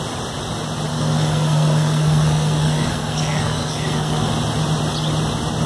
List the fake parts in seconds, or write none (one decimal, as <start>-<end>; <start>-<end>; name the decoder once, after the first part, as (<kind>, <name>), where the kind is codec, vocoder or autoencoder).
0.9-4.3 (codec, SNAC)